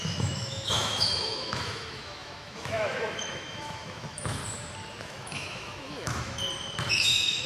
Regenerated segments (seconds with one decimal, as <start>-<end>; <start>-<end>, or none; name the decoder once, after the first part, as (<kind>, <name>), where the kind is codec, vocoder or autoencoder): 0.0-4.4 (autoencoder, DAC-VAE); 5.0-6.4; 6.9-7.5